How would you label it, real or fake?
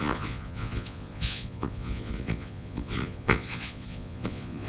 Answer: fake